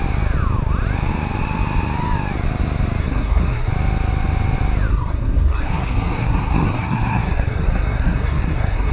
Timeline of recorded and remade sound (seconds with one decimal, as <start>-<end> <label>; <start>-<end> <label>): 0.0-3.0 recorded; 3.0-3.7 remade; 3.7-4.9 recorded; 4.9-8.9 remade